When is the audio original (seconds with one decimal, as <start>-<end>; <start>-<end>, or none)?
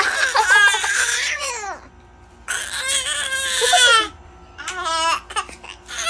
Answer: 0.0-0.8; 1.5-6.1